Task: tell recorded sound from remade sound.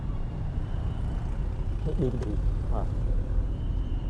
remade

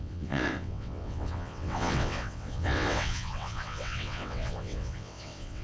remade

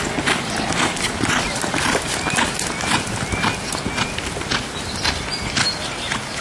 recorded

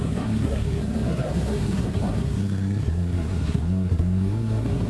remade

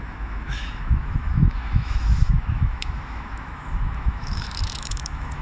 remade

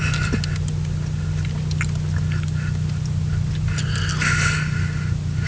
recorded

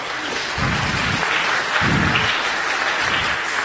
remade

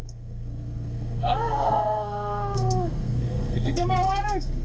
remade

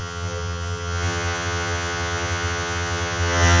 remade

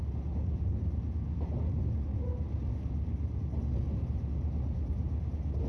recorded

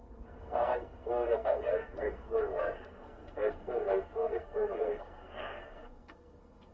remade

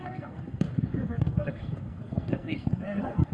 remade